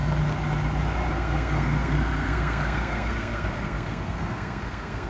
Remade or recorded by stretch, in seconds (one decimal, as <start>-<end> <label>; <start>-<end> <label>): 0.0-1.1 recorded; 1.1-5.1 remade